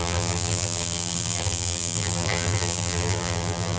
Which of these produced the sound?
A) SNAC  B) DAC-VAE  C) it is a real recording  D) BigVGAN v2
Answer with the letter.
D